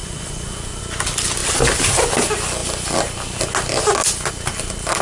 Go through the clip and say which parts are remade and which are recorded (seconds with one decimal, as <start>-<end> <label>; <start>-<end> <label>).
0.0-0.8 remade; 0.8-5.0 recorded